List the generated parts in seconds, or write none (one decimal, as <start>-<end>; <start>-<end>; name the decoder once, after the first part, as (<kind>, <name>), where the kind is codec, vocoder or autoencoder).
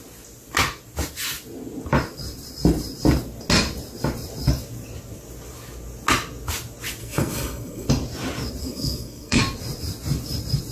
7.0-7.9 (codec, SNAC); 8.6-9.4